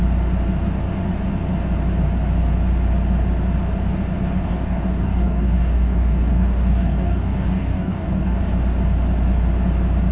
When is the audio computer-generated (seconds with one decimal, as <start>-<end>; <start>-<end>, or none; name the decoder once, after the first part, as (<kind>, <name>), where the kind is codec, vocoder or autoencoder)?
4.4-8.4 (codec, DAC)